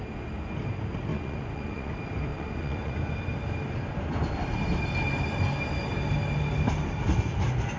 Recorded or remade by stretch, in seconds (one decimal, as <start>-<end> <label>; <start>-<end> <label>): 0.0-1.1 recorded; 1.1-1.9 remade; 1.9-2.3 recorded; 2.3-2.9 remade; 2.9-7.8 recorded